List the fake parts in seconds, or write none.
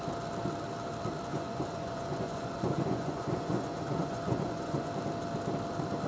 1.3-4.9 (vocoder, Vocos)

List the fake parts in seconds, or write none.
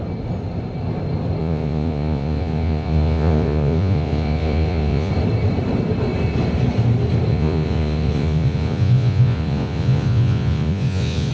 1.4-5.1 (vocoder, Vocos); 7.3-11.3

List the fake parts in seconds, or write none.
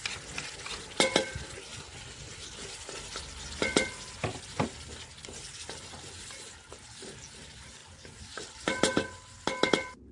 none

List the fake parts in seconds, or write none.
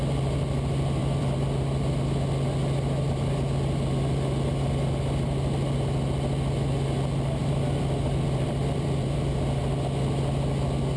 1.0-1.6 (vocoder, BigVGAN v2); 7.4-9.5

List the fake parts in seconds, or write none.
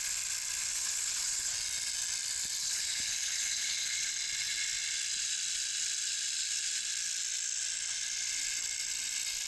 0.7-1.5 (codec, HILCodec); 2.6-4.1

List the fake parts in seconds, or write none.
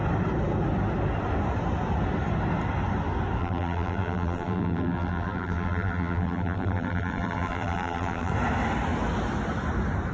3.4-8.3 (vocoder, BigVGAN v2)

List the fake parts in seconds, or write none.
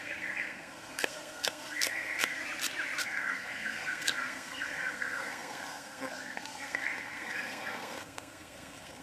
0.0-2.4 (codec, SNAC); 3.0-9.0